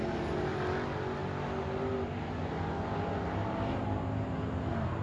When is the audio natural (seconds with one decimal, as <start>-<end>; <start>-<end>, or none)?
0.0-5.0